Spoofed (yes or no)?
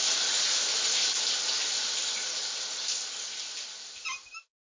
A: no